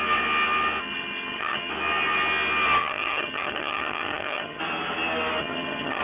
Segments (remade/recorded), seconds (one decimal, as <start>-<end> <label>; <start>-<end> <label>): 0.0-0.8 recorded; 0.8-1.7 remade; 1.7-2.8 recorded; 2.8-4.6 remade; 4.6-5.4 recorded; 5.4-6.0 remade